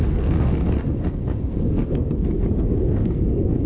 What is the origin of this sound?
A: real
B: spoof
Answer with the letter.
B